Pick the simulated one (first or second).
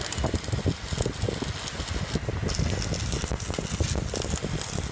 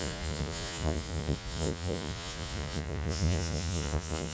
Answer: second